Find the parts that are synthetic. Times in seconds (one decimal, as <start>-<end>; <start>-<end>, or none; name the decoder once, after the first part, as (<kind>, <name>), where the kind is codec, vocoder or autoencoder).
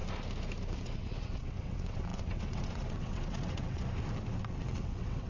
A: 0.7-3.8 (vocoder, WaveNeXt); 4.4-5.3